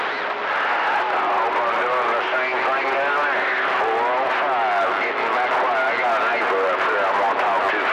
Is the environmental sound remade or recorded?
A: recorded